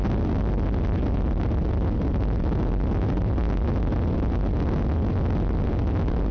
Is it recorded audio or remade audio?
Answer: recorded